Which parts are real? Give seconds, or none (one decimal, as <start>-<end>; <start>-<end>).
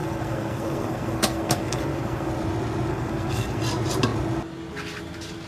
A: 2.3-2.9; 3.6-5.5